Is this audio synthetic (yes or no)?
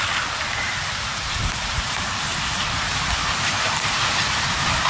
yes